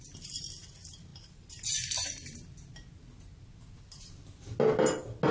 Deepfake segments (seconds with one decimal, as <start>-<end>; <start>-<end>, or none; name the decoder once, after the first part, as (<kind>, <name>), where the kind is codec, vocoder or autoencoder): none